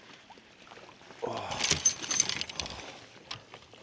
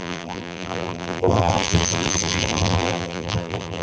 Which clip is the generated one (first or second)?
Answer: second